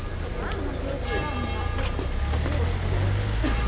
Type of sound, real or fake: real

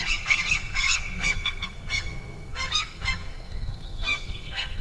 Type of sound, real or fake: fake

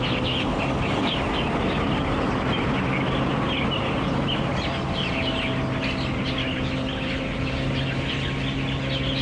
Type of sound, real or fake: real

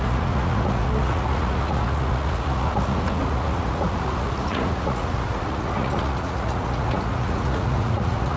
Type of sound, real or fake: fake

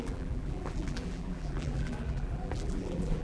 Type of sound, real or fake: fake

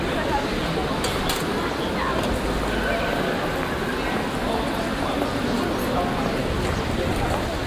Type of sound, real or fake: real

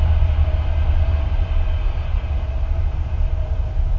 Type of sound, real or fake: real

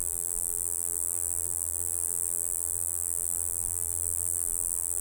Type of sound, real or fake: fake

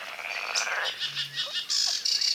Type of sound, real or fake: real